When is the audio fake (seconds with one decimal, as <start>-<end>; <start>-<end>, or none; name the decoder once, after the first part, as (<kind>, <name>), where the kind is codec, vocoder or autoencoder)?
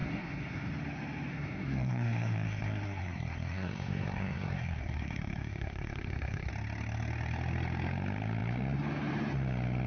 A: 0.0-0.7 (codec, SNAC); 1.3-6.5